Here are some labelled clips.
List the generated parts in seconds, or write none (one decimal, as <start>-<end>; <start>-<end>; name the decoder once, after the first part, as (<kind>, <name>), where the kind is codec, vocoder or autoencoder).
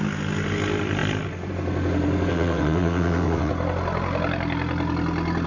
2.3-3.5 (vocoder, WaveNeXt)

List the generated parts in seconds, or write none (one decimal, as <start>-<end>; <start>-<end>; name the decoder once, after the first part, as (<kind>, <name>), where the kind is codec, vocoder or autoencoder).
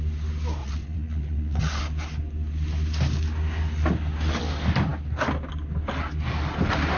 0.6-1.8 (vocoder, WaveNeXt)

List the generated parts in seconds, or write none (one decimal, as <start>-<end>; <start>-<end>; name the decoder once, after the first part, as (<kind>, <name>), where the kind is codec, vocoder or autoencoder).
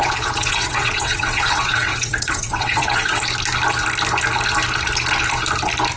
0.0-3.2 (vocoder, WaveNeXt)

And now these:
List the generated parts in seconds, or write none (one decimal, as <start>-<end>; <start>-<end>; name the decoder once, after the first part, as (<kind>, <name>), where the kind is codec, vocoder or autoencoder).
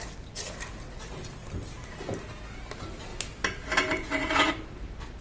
none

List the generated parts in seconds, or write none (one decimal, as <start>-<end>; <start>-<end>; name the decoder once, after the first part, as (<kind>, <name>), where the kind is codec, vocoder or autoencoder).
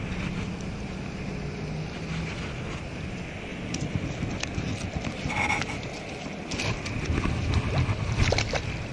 none